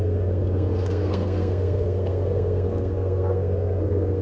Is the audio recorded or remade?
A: remade